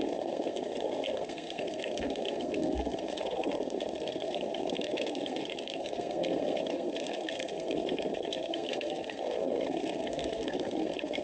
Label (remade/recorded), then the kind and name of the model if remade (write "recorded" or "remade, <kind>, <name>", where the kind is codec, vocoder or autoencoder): remade, codec, SNAC